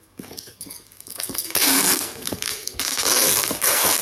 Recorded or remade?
remade